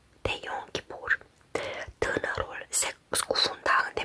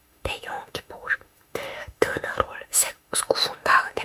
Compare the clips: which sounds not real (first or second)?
second